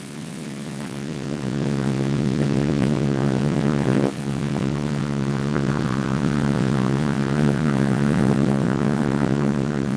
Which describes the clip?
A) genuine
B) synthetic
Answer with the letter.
B